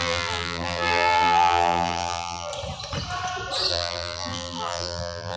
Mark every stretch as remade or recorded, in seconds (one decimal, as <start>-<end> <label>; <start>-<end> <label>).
0.0-2.5 remade; 2.5-3.7 recorded; 3.7-5.4 remade